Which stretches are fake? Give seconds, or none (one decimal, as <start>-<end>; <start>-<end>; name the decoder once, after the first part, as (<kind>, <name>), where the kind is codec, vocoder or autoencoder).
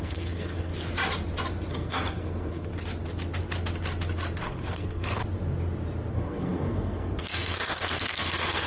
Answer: 0.0-0.7 (codec, SNAC); 1.7-2.7; 4.4-5.2; 6.1-8.7